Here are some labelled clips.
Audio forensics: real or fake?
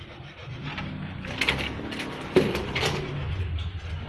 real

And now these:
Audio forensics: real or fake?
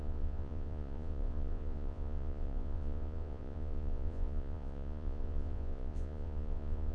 fake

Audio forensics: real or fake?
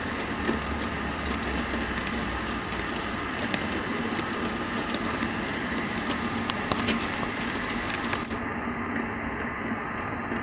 real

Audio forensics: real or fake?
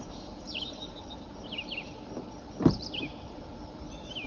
fake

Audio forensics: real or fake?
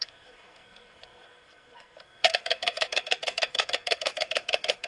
fake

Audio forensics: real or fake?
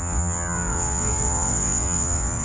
fake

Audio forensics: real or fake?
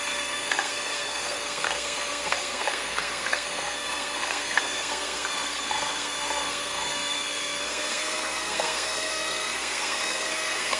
fake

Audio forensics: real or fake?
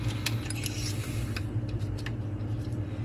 real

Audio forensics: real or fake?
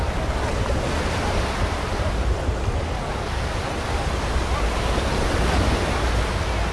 real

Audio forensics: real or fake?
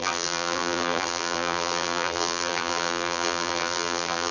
fake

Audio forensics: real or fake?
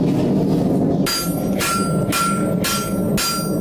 real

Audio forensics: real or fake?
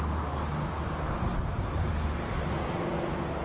real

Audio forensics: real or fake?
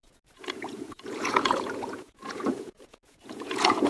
fake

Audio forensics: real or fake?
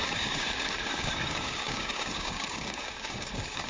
fake